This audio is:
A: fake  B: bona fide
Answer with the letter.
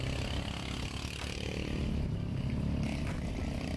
B